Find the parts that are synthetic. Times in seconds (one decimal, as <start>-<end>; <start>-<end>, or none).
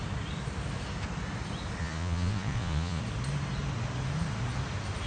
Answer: 1.8-3.0